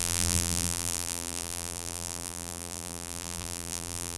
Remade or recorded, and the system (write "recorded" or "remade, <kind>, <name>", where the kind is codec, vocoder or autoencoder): remade, vocoder, BigVGAN v2